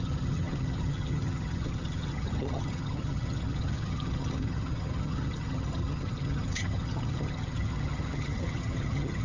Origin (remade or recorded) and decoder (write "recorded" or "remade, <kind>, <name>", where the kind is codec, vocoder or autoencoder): remade, vocoder, HiFi-GAN